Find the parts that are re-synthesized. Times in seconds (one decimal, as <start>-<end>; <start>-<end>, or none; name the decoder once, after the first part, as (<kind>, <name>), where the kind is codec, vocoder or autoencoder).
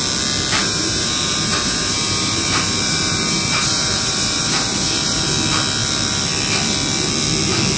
0.6-5.3 (vocoder, BigVGAN v2)